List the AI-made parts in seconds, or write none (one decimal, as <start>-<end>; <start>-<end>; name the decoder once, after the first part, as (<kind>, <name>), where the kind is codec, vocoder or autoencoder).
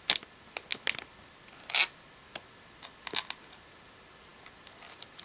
none